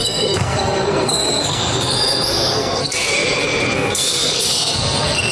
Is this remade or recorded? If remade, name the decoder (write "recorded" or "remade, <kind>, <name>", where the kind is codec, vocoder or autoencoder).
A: remade, codec, SNAC